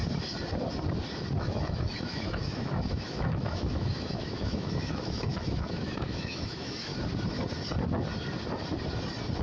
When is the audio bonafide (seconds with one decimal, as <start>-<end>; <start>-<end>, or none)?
0.0-1.4; 6.9-9.4